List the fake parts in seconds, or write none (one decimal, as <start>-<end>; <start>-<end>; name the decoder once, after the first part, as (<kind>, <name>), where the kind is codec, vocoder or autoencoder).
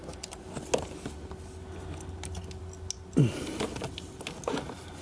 none